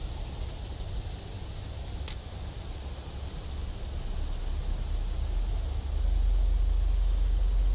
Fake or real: real